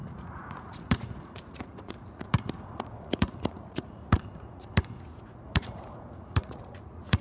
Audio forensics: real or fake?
fake